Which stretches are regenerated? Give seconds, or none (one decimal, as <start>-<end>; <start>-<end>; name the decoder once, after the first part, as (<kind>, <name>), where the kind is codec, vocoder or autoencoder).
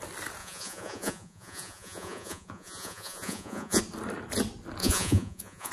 0.4-3.8 (vocoder, Vocos); 4.8-5.7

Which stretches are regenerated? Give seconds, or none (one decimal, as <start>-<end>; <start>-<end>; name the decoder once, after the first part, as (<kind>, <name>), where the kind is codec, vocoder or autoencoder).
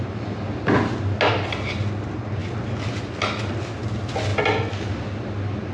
none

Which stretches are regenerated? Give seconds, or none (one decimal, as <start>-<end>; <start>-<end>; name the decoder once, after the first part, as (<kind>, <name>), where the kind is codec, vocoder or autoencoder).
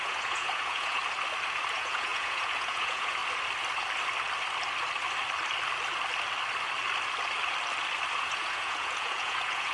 0.0-1.0 (vocoder, Vocos); 1.7-3.2; 8.1-9.7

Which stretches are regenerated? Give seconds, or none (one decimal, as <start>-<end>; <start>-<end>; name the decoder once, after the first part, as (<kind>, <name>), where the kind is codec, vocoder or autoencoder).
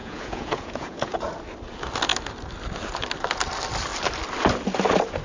0.0-1.3 (vocoder, Vocos)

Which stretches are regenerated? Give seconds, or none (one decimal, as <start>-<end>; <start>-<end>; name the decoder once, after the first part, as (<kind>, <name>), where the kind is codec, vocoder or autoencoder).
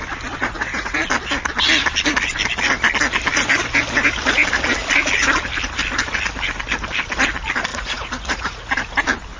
0.4-1.0 (vocoder, Vocos); 7.7-8.9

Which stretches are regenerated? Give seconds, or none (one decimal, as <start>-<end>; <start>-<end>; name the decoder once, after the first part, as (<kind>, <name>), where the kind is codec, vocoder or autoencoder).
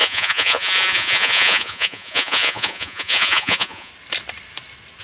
0.0-3.9 (vocoder, Vocos)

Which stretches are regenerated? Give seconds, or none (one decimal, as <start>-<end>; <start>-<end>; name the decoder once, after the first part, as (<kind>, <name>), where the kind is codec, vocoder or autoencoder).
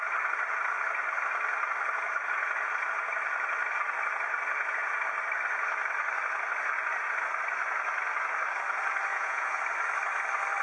9.1-9.6 (vocoder, Vocos)